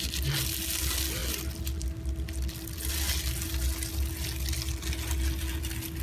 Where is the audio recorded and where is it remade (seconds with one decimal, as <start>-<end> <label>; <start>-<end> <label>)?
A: 0.0-6.0 recorded